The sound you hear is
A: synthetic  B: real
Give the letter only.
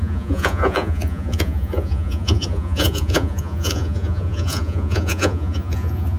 A